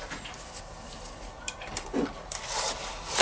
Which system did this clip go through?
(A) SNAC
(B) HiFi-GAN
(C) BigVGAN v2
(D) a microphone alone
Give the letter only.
C